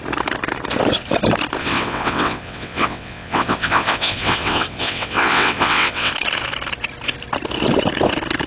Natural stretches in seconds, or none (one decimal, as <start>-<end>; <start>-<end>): 0.0-1.6; 6.1-8.5